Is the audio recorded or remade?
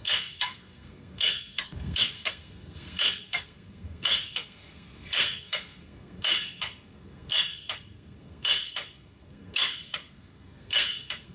remade